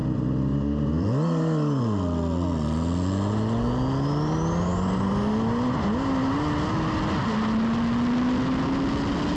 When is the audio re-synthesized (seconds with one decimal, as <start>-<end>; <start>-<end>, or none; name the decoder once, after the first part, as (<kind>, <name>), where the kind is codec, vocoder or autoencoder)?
0.0-1.8 (vocoder, BigVGAN v2)